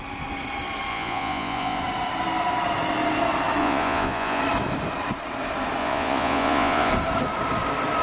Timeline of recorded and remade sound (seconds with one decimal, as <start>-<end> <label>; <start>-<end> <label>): 0.0-0.9 recorded; 0.9-1.8 remade; 1.8-3.6 recorded; 3.6-4.4 remade; 4.4-5.8 recorded; 5.8-6.9 remade; 6.9-8.0 recorded